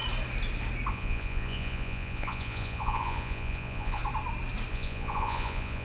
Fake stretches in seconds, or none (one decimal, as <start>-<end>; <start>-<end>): 0.9-4.0; 4.7-5.8